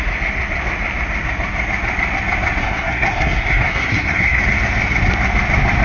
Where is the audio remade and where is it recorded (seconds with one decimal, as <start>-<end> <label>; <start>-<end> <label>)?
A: 0.0-2.6 recorded; 2.6-4.4 remade; 4.4-5.8 recorded

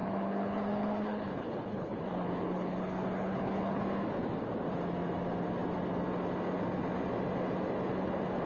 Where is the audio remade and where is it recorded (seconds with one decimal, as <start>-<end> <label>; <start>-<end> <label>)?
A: 0.0-3.8 remade; 3.8-8.5 recorded

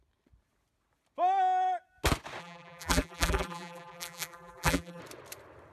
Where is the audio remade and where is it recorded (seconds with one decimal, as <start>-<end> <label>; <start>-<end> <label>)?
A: 0.0-2.4 recorded; 2.4-5.0 remade; 5.0-5.7 recorded

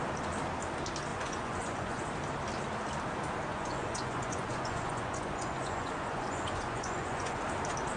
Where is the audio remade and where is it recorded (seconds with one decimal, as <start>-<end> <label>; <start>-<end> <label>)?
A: 0.0-1.1 recorded; 1.1-2.0 remade; 2.0-3.5 recorded; 3.5-7.4 remade; 7.4-8.0 recorded

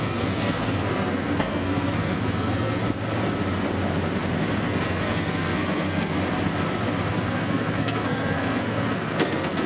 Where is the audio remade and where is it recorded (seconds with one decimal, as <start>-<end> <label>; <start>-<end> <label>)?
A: 0.0-2.8 remade; 2.8-4.6 recorded; 4.6-6.2 remade; 6.2-7.1 recorded; 7.1-9.7 remade

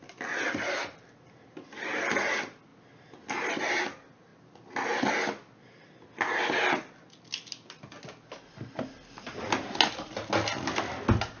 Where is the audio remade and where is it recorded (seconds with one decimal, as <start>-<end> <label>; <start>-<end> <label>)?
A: 0.0-11.4 recorded

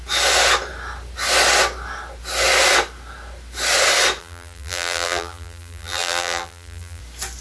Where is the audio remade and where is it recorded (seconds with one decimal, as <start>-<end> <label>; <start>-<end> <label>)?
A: 0.0-4.2 recorded; 4.2-7.0 remade; 7.0-7.4 recorded